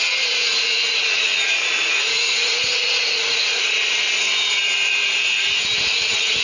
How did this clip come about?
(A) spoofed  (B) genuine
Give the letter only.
A